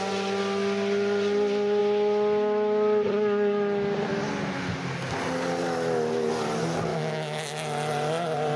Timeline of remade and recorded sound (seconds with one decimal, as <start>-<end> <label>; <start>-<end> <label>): 0.0-6.9 recorded; 6.9-7.4 remade; 7.4-8.6 recorded